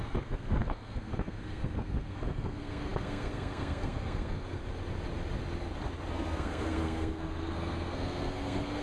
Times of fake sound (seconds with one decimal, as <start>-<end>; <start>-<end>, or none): 0.0-4.6; 6.1-8.8